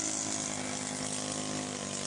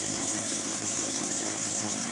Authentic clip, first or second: first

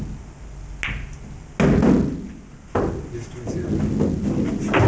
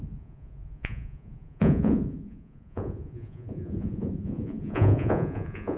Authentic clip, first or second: first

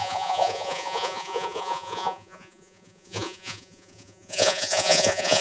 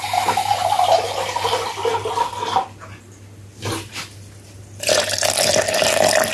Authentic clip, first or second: second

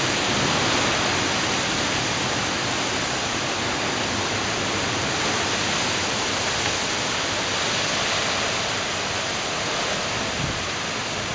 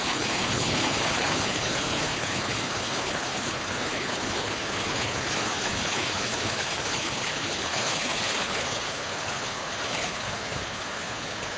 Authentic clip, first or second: first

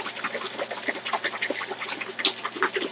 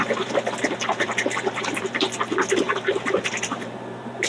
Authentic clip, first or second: first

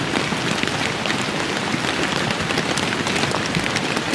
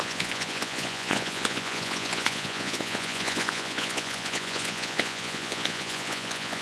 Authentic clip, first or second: first